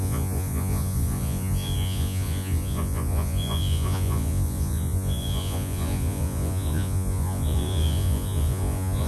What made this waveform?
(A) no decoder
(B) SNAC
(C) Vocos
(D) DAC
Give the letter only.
C